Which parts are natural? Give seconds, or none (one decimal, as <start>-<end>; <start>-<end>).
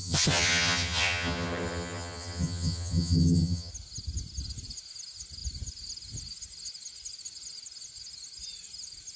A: 3.7-9.2